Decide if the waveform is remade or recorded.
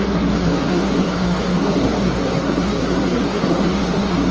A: remade